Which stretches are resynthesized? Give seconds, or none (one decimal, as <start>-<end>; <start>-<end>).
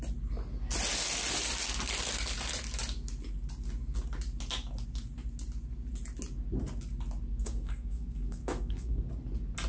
7.3-9.0